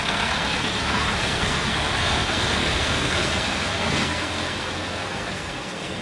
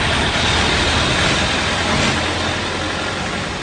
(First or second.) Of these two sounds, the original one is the second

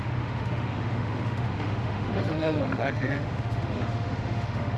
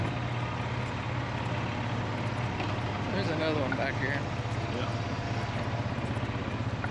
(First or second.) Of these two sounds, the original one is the second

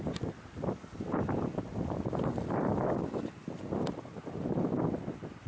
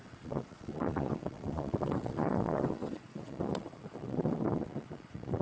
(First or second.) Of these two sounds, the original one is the first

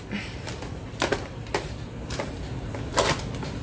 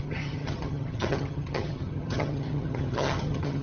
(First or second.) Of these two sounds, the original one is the first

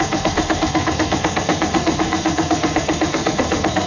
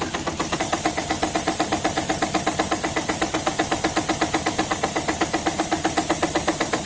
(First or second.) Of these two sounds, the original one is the second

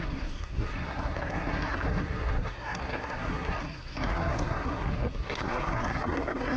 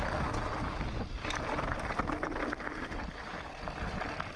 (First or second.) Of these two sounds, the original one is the second